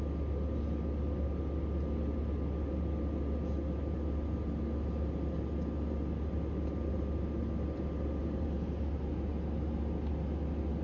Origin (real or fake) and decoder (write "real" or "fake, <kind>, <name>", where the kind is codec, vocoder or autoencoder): real